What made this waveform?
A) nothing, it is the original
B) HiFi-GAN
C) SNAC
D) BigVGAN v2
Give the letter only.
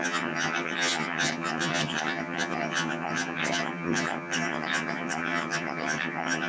B